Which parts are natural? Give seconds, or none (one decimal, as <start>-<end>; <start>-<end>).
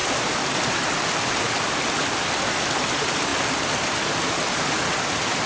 0.0-5.5